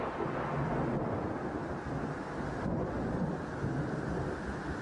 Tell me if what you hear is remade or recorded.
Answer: recorded